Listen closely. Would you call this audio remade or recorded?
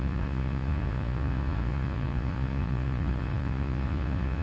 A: remade